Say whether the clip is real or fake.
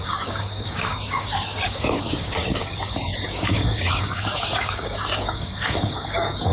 fake